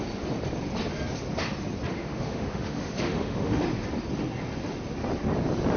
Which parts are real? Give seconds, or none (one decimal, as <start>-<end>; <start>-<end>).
0.0-1.9; 3.6-5.8

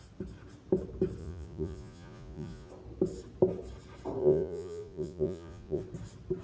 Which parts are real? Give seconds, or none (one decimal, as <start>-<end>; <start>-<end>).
0.0-1.2; 2.7-4.2; 5.8-6.4